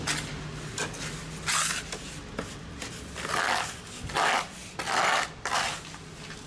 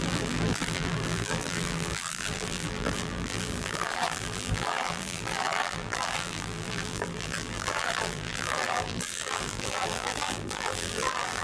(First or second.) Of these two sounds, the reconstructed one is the second